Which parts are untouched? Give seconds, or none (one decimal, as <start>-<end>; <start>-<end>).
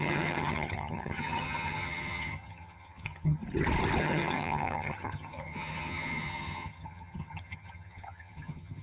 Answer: 3.4-4.0